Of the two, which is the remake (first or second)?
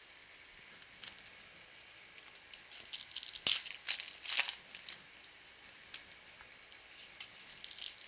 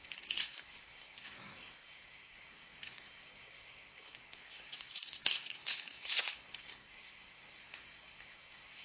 second